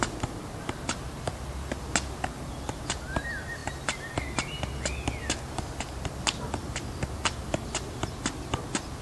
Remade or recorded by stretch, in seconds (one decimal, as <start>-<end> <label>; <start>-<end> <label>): 0.0-9.0 recorded